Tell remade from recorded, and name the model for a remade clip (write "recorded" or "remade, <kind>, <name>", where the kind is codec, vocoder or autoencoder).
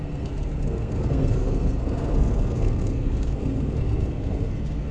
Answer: remade, codec, SNAC